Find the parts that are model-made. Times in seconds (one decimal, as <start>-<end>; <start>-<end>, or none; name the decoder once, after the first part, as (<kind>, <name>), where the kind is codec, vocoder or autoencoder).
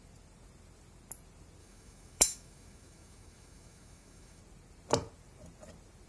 1.6-4.4 (autoencoder, DAC-VAE)